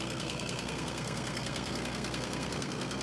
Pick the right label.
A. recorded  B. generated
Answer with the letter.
B